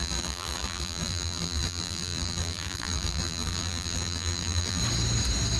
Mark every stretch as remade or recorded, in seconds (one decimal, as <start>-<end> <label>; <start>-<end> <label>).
0.0-4.8 remade; 4.8-5.6 recorded